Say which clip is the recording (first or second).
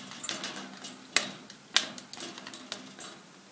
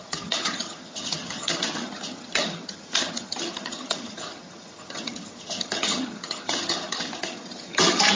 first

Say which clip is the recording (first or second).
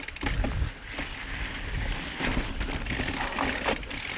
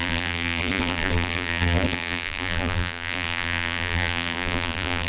first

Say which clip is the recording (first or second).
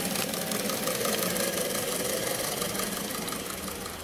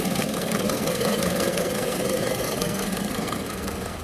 first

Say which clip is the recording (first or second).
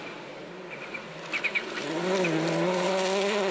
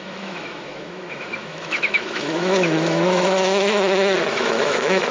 first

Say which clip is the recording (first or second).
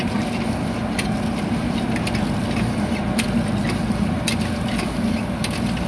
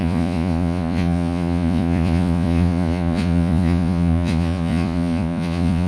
first